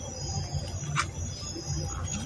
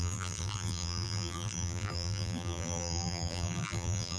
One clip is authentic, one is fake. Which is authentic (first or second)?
first